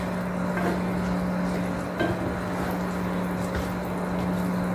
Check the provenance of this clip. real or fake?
real